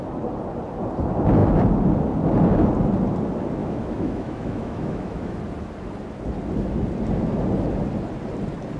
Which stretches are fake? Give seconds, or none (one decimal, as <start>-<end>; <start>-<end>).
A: 3.6-5.4